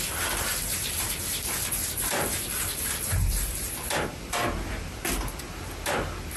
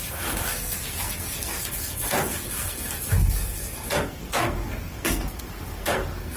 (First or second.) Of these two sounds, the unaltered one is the first